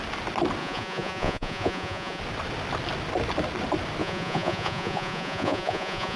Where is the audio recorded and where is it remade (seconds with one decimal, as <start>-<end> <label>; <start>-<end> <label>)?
0.0-0.6 recorded; 0.6-2.2 remade; 2.2-4.0 recorded; 4.0-6.2 remade